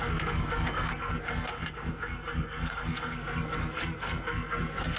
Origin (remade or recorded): remade